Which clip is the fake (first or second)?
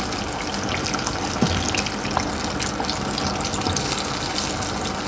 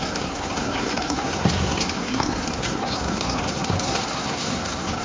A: second